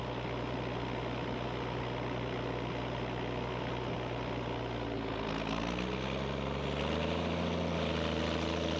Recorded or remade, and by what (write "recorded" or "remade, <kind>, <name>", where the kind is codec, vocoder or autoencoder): recorded